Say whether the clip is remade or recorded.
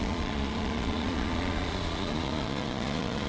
remade